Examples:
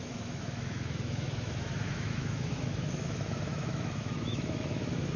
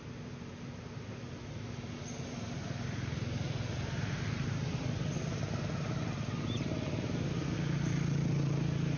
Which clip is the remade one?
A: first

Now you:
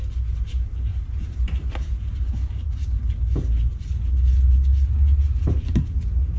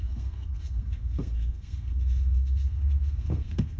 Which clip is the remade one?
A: second